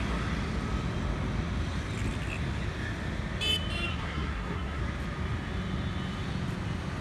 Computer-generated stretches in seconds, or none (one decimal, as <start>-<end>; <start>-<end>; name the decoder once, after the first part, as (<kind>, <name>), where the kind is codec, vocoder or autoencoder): 3.9-4.8 (codec, SNAC)